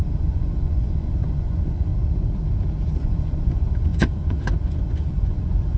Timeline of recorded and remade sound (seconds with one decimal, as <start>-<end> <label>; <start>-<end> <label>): 0.0-1.9 remade; 1.9-3.0 recorded; 3.0-5.8 remade